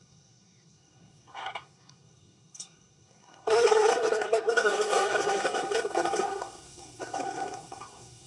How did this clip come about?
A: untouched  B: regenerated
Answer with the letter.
B